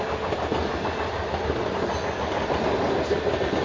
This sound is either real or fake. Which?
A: real